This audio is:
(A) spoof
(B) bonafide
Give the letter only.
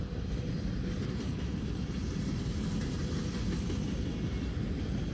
B